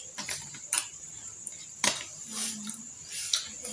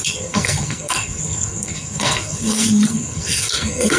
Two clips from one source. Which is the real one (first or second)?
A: first